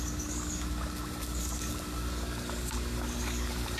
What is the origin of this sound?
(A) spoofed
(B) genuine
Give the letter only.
A